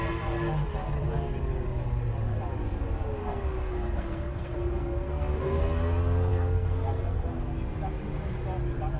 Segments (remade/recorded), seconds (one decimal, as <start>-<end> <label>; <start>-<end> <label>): 0.0-3.2 recorded; 3.2-5.6 remade; 5.6-6.3 recorded; 6.3-7.4 remade; 7.4-9.0 recorded